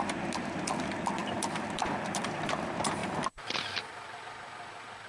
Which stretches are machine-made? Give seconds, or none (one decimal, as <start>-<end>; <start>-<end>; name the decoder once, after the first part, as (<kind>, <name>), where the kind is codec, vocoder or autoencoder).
1.2-2.5 (vocoder, BigVGAN v2); 3.0-4.2